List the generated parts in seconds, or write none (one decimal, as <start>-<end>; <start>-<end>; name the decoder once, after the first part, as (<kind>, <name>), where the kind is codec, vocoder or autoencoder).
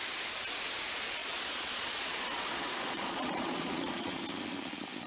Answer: 1.2-4.2 (vocoder, Vocos)